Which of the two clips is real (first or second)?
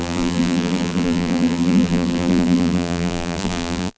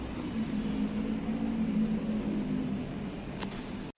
second